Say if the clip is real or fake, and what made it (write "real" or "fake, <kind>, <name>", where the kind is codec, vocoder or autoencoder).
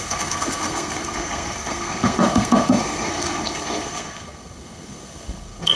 fake, codec, SNAC